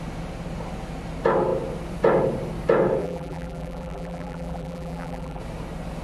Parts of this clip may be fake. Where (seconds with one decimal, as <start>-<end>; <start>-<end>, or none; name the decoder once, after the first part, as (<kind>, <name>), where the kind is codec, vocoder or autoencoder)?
3.0-5.4 (vocoder, BigVGAN v2)